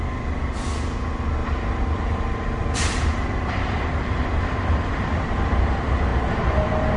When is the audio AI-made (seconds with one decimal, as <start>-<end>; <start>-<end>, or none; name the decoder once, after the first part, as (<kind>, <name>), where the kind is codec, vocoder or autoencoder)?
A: 1.4-5.6 (vocoder, BigVGAN v2)